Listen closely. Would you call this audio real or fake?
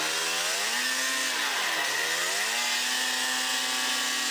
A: real